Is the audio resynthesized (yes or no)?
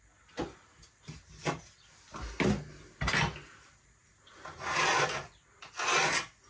no